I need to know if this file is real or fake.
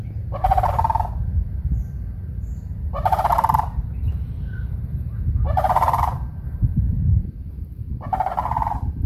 fake